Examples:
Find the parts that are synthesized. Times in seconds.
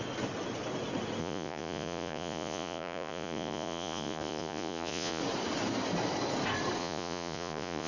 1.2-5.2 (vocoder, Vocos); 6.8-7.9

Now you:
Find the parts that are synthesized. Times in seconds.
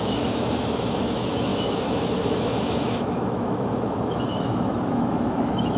0.0-5.8 (autoencoder, DAC-VAE)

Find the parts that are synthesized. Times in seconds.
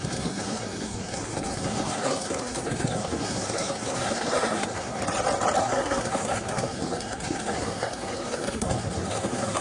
0.0-5.0 (codec, SNAC); 5.6-9.6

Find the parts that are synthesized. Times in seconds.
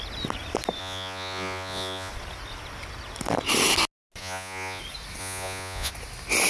0.8-2.1 (vocoder, Vocos); 4.2-4.8; 5.2-5.9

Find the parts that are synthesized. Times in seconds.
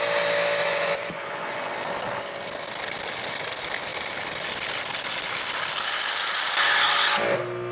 0.6-1.7 (vocoder, Vocos)